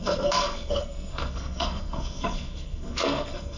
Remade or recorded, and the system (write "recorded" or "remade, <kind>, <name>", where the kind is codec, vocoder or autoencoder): remade, codec, SNAC